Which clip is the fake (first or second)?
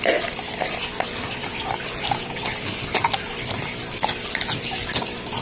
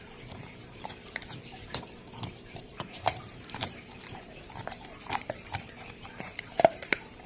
second